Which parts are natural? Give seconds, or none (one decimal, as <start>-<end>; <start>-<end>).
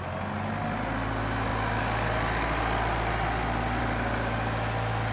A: 0.0-5.1